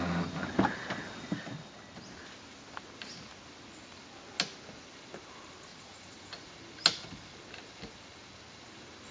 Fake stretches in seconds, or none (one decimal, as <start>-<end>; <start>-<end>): 5.7-6.5